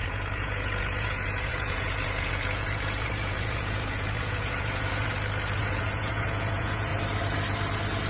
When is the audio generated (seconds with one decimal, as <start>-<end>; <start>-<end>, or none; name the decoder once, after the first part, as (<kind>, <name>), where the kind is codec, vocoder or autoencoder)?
0.0-5.1 (vocoder, Vocos); 5.6-6.9